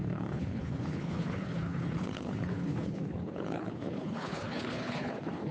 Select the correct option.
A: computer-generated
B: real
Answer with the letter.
A